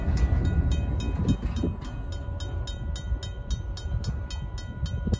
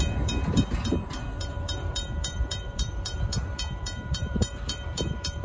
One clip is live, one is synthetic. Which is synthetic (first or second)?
second